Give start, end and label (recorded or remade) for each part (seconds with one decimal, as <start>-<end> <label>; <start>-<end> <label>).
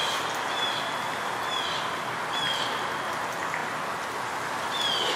0.0-5.2 recorded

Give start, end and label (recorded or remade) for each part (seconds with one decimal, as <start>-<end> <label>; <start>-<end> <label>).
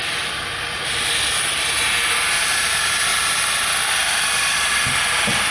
0.0-0.8 remade; 0.8-2.4 recorded; 2.4-3.1 remade; 3.1-3.8 recorded; 3.8-5.5 remade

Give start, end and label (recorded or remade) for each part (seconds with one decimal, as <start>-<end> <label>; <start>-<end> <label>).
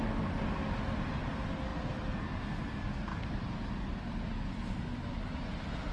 0.0-3.1 recorded; 3.1-3.7 remade; 3.7-4.9 recorded; 4.9-5.5 remade; 5.5-5.9 recorded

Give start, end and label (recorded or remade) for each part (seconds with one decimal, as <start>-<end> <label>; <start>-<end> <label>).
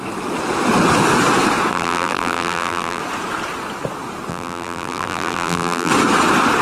0.0-1.7 recorded; 1.7-3.0 remade; 3.0-4.3 recorded; 4.3-5.9 remade; 5.9-6.6 recorded